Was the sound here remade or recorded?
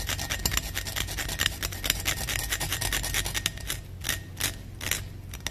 recorded